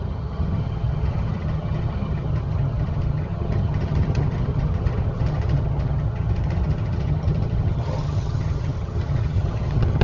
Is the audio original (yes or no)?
no